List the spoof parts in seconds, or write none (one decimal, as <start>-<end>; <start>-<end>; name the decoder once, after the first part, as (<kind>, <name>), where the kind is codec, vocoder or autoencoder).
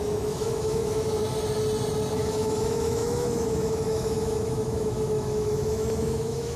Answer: 0.0-1.2 (autoencoder, DAC-VAE); 2.1-6.6